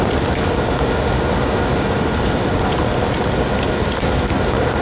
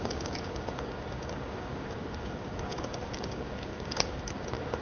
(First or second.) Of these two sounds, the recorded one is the first